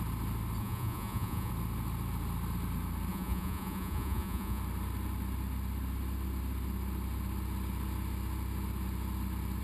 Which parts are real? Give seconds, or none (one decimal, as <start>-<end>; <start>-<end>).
0.0-0.6; 1.5-3.1; 4.6-9.6